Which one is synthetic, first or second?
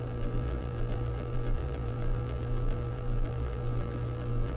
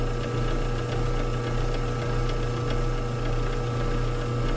first